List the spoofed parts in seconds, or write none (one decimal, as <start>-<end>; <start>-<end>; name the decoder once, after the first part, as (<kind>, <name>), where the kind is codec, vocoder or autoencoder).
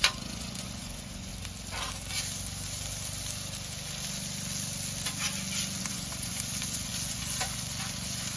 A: 0.0-1.3 (vocoder, Vocos); 5.8-8.4